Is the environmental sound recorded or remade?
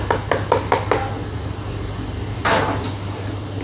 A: recorded